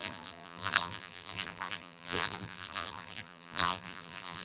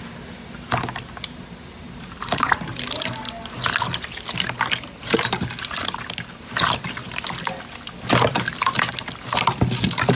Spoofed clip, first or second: first